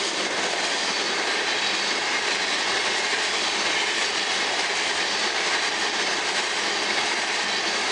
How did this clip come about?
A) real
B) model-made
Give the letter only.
A